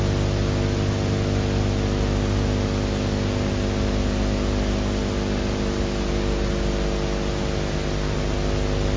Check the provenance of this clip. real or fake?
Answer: real